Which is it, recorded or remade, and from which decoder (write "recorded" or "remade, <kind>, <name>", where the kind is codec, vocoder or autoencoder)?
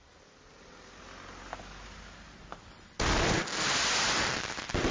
recorded